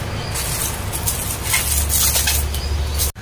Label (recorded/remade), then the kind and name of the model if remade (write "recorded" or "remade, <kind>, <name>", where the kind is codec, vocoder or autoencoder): recorded